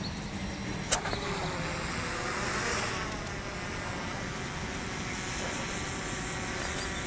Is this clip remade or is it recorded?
recorded